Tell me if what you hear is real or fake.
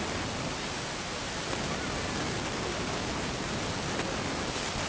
real